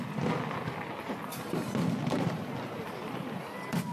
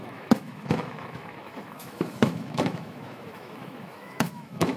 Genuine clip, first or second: first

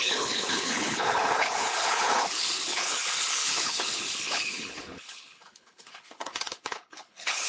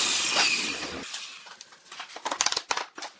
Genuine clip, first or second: second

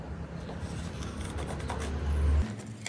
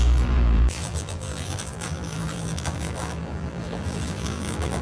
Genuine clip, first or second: first